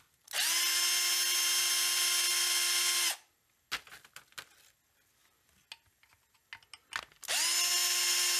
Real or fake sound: real